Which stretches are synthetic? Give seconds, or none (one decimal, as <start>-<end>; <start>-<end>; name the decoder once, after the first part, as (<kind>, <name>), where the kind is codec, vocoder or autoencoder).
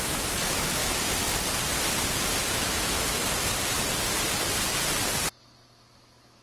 0.0-0.8 (autoencoder, DAC-VAE); 2.5-3.2; 5.4-6.4